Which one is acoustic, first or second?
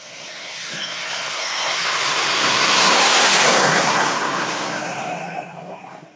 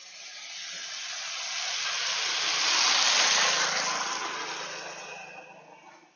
second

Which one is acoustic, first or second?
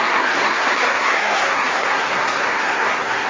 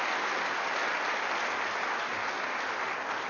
second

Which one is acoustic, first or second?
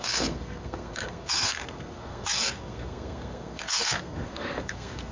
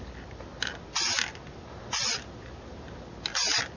second